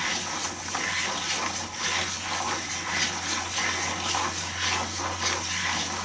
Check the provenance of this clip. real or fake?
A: real